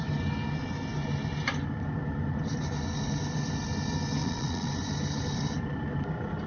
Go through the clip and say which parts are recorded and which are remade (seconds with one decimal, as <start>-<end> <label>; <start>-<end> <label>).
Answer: 0.0-4.2 recorded; 4.2-4.7 remade; 4.7-6.5 recorded